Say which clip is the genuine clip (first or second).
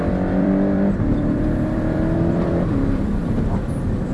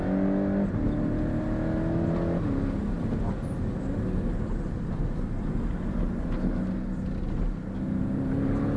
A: second